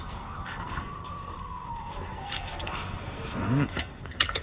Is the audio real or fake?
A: fake